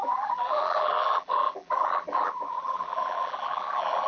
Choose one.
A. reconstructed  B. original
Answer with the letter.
A